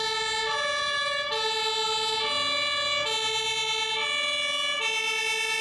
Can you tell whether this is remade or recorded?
recorded